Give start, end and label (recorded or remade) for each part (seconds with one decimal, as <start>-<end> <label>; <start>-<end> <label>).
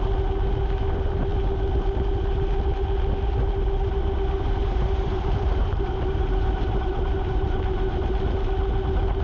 0.0-4.6 recorded; 4.6-8.1 remade; 8.1-9.2 recorded